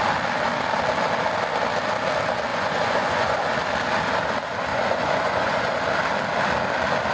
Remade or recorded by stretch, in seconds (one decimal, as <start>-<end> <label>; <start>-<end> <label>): 0.0-2.5 recorded; 2.5-3.4 remade; 3.4-4.7 recorded; 4.7-5.7 remade; 5.7-7.1 recorded